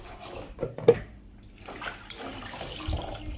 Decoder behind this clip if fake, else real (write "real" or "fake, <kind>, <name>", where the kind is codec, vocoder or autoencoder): real